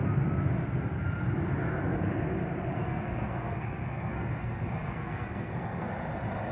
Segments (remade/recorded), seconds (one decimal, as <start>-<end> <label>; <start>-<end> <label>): 0.0-2.7 recorded; 2.7-5.9 remade; 5.9-6.5 recorded